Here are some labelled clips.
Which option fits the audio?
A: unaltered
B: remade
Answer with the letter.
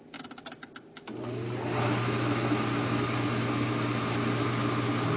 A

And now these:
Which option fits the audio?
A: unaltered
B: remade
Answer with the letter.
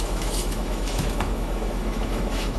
B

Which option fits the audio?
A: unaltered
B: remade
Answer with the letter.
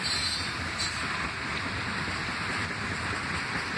A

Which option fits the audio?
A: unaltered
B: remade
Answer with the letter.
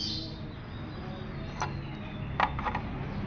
A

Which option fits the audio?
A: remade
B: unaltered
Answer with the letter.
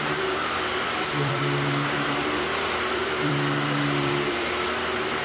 A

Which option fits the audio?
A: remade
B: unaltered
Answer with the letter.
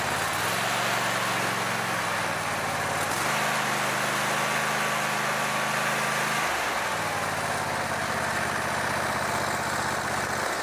B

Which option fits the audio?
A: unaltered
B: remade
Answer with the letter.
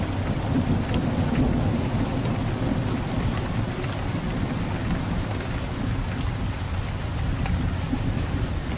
B